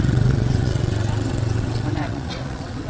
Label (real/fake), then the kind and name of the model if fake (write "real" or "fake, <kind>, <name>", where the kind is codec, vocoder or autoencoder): fake, vocoder, WaveNeXt